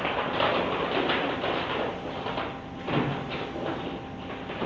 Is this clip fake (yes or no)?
no